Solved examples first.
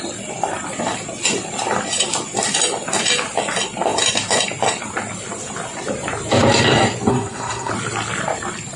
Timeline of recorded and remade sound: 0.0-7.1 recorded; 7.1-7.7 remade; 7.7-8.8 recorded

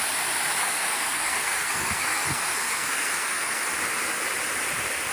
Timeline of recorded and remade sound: 0.0-0.6 recorded; 0.6-3.7 remade; 3.7-5.1 recorded

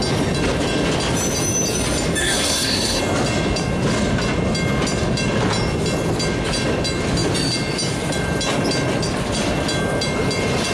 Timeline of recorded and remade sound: 0.0-2.2 recorded; 2.2-3.0 remade; 3.0-10.7 recorded

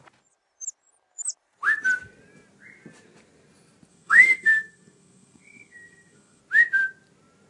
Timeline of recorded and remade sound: 0.0-3.9 recorded; 3.9-6.4 remade; 6.4-7.5 recorded